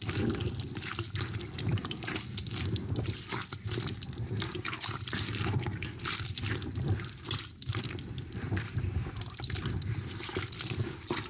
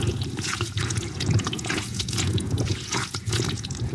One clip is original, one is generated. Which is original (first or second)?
first